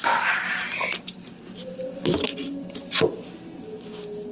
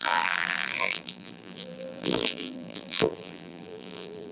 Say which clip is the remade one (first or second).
second